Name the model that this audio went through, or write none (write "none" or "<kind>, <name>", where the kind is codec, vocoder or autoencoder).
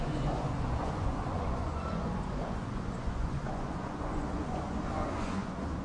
vocoder, Vocos